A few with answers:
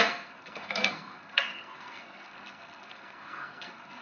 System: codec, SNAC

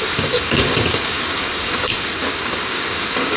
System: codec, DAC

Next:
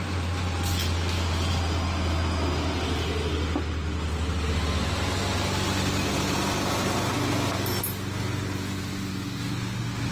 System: none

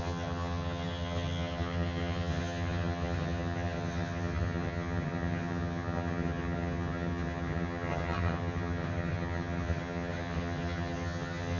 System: vocoder, HiFi-GAN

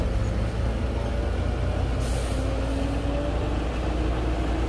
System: none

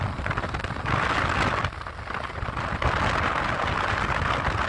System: none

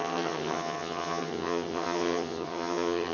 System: vocoder, HiFi-GAN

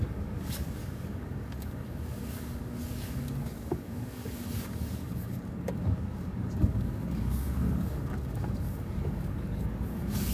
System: codec, DAC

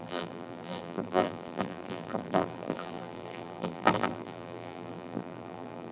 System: vocoder, BigVGAN v2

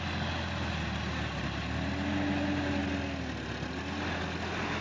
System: none